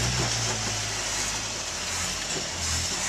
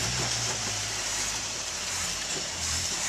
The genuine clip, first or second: first